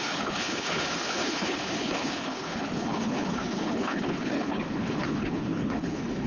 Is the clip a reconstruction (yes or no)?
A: yes